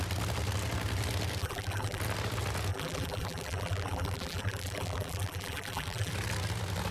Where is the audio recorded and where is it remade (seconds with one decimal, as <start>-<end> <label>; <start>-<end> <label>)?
0.0-1.4 recorded; 1.4-2.0 remade; 2.0-2.7 recorded; 2.7-6.1 remade; 6.1-6.9 recorded